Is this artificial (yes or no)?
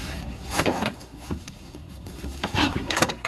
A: yes